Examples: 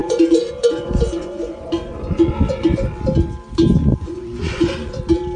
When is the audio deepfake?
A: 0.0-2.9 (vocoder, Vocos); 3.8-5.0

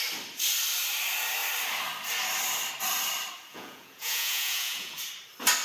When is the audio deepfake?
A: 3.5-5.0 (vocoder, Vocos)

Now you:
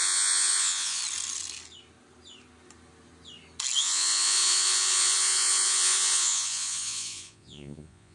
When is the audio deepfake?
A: 0.0-1.0 (vocoder, Vocos); 3.8-8.1

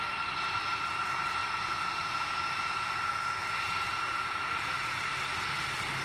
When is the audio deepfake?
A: 1.4-5.0 (vocoder, Vocos)

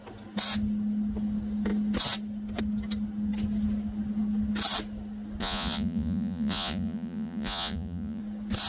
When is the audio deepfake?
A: 5.4-8.2 (vocoder, Vocos)